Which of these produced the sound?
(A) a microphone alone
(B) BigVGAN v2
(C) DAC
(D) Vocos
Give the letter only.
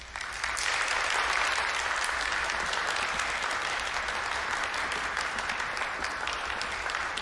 B